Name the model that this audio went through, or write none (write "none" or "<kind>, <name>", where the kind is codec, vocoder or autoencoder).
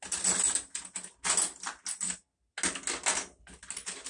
none